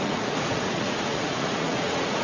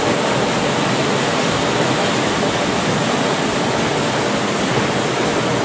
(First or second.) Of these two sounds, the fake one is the first